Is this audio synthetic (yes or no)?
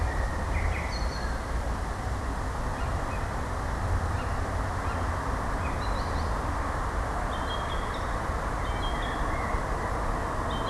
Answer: no